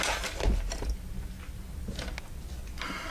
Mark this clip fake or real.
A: real